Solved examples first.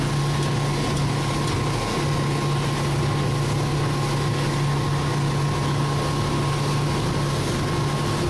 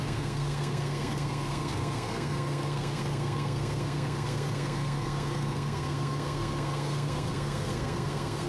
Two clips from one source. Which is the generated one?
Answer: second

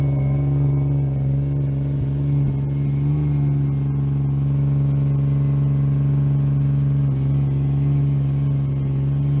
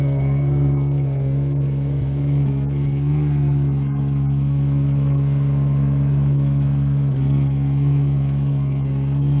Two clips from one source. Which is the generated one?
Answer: second